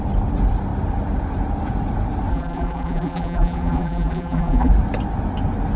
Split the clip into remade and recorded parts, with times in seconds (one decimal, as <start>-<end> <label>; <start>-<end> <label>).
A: 0.0-2.3 recorded; 2.3-4.7 remade; 4.7-5.8 recorded